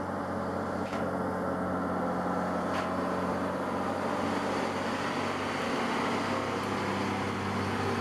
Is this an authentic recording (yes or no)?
yes